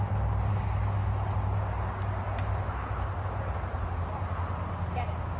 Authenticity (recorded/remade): recorded